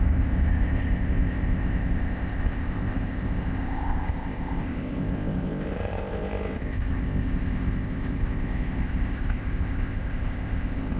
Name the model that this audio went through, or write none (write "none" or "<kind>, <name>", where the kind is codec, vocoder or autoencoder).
codec, ZipCodec